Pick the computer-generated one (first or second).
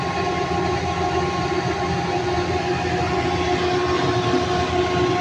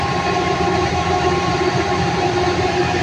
second